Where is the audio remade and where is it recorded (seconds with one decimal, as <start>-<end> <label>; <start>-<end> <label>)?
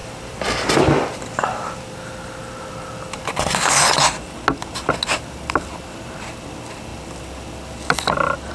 0.0-2.4 remade; 2.4-8.5 recorded